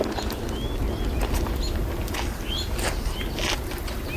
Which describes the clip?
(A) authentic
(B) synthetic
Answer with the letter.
A